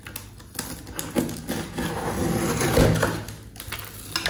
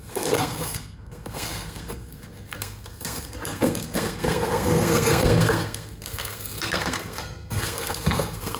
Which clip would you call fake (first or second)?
second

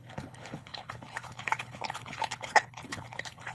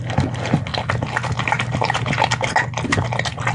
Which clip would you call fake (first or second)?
first